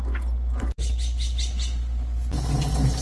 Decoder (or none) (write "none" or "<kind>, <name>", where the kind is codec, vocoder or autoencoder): none